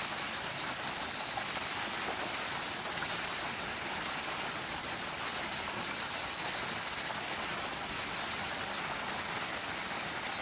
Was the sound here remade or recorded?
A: recorded